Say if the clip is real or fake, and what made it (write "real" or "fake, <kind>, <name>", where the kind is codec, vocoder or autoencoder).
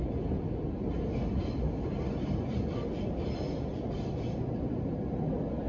real